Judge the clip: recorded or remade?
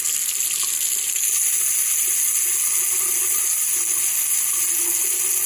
recorded